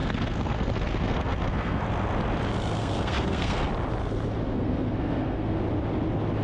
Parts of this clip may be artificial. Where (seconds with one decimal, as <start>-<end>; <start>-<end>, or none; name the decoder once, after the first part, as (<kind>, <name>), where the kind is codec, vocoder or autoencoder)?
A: 0.0-1.8 (codec, SNAC); 2.8-3.7; 4.5-5.6